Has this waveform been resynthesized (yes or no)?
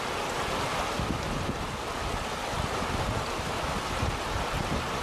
no